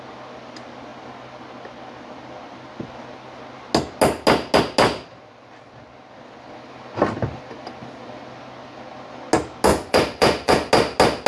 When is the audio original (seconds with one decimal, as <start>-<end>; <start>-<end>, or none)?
0.0-9.7; 10.7-11.3